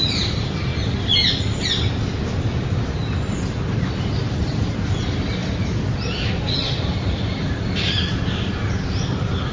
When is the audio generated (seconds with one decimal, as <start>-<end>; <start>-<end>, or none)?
0.0-0.7; 3.6-9.5